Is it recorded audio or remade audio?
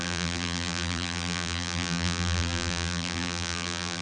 remade